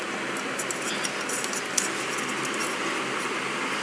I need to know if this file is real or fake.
real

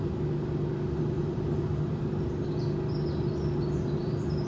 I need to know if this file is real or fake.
real